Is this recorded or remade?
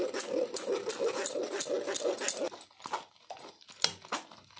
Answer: recorded